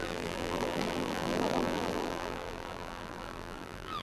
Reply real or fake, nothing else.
fake